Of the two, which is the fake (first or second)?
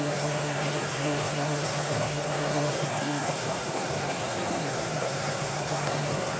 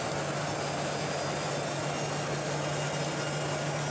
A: first